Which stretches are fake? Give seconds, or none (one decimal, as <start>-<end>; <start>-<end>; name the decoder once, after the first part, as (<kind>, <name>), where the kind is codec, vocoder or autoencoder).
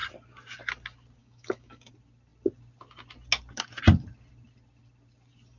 1.2-1.9 (autoencoder, DAC-VAE)